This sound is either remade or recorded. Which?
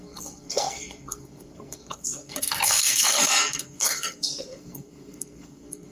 remade